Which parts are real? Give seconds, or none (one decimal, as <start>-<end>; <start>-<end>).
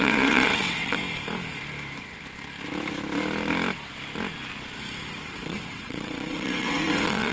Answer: 1.0-5.3